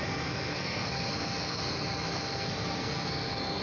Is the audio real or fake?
fake